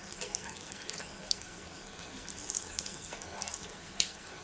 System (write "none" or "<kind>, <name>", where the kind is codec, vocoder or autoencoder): codec, SNAC